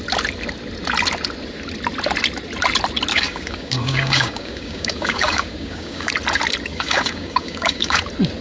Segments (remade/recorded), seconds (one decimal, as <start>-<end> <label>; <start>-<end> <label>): 0.0-3.1 recorded; 3.1-6.1 remade; 6.1-6.7 recorded; 6.7-8.0 remade; 8.0-8.4 recorded